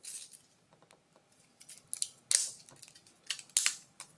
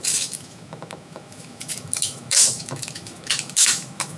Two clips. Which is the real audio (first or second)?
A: first